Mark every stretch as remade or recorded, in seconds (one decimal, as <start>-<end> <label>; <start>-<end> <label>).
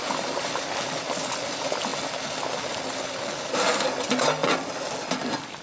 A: 0.0-5.6 recorded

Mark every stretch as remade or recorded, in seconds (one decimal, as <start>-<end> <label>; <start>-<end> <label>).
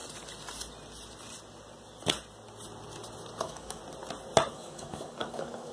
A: 0.0-3.4 recorded; 3.4-3.8 remade; 3.8-4.5 recorded; 4.5-5.7 remade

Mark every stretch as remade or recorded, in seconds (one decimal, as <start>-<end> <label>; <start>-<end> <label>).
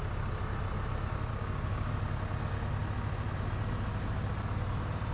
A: 0.0-1.3 recorded; 1.3-1.9 remade; 1.9-5.1 recorded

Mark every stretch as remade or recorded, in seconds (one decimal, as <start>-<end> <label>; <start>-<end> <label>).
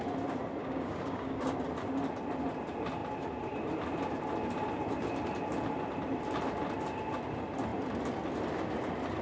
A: 0.0-0.6 recorded; 0.6-1.4 remade; 1.4-9.2 recorded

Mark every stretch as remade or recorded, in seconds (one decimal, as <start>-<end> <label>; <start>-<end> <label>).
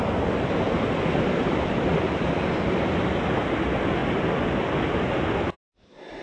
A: 0.0-6.2 recorded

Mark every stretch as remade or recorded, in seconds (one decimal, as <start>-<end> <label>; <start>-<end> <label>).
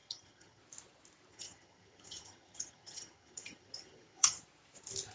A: 0.0-0.6 remade; 0.6-1.3 recorded; 1.3-4.4 remade; 4.4-5.1 recorded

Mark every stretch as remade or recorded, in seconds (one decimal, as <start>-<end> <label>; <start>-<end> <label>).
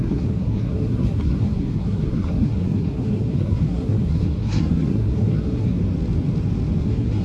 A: 0.0-5.8 remade; 5.8-6.8 recorded; 6.8-7.2 remade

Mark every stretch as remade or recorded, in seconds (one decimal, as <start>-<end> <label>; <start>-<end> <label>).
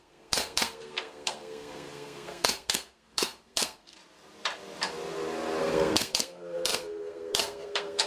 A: 0.0-4.0 remade; 4.0-5.6 recorded; 5.6-8.1 remade